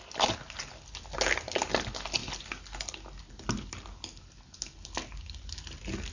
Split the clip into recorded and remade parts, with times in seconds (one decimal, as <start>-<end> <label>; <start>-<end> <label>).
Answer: 0.0-6.1 recorded